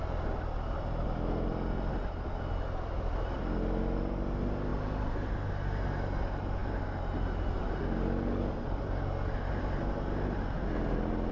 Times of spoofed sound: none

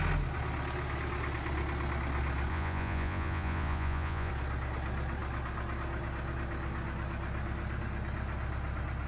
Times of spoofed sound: 2.5-4.3 (vocoder, Vocos)